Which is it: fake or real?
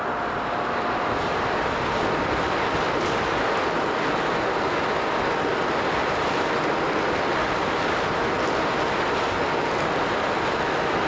real